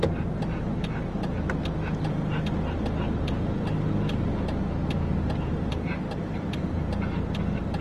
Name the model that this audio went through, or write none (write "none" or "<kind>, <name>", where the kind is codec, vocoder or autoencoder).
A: none